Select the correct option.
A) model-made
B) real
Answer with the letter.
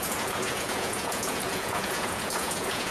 A